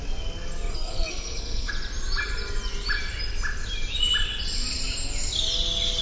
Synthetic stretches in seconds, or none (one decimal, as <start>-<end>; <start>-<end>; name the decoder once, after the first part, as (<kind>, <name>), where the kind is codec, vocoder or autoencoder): 0.7-1.7 (codec, SNAC)

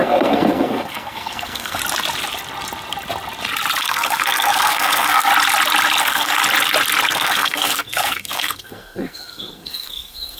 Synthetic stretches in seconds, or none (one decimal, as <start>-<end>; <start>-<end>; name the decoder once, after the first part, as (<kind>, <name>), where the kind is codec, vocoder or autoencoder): 0.0-1.8 (codec, SNAC); 3.8-5.3; 6.0-6.4; 7.1-10.4

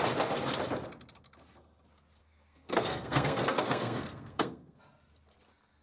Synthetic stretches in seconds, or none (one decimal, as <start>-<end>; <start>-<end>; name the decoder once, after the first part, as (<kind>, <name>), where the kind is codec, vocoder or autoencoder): 2.2-4.8 (codec, SNAC)

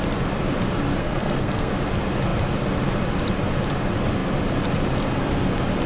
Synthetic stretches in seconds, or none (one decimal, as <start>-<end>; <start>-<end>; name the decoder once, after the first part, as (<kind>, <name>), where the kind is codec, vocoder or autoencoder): 1.0-1.7 (codec, SNAC)